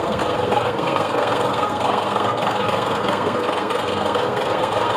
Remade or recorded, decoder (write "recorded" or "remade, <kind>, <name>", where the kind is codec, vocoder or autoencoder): remade, codec, SNAC